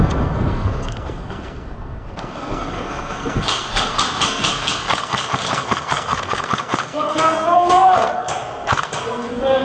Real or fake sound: fake